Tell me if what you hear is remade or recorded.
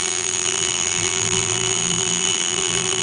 remade